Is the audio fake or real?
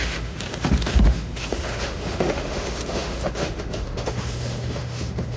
fake